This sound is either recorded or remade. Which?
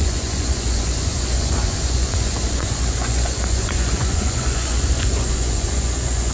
remade